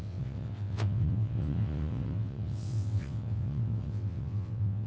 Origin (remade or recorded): remade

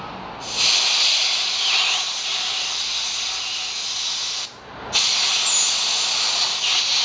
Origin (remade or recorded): recorded